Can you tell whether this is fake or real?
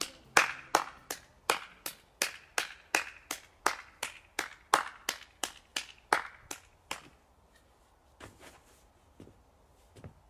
real